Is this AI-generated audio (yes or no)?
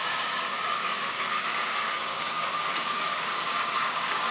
yes